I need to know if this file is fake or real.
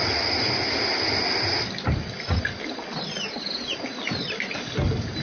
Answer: real